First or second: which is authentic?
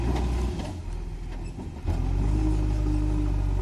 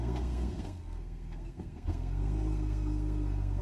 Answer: first